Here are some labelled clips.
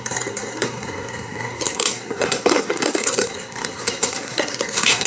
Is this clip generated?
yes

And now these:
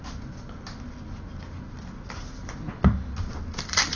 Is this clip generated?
no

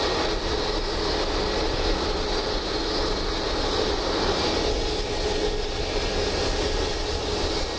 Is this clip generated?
no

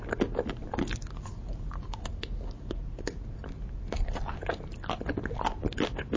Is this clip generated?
no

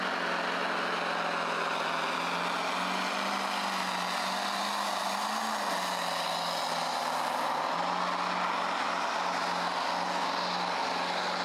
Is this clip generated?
no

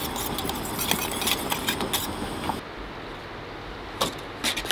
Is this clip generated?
no